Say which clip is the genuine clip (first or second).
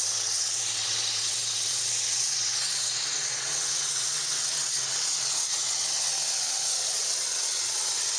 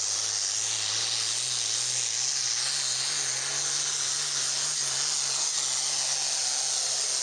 second